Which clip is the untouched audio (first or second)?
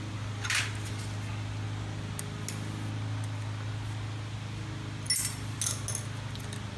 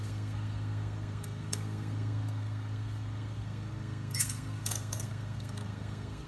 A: first